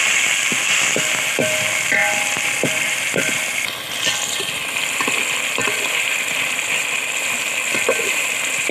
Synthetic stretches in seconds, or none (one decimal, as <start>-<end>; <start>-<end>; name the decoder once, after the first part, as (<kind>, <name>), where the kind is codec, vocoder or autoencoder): none